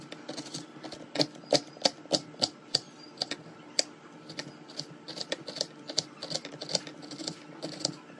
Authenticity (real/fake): real